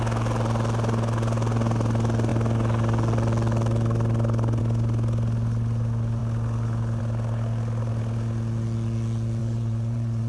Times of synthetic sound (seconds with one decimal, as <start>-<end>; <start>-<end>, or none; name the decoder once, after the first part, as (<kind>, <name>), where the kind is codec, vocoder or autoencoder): 9.4-10.3 (vocoder, Vocos)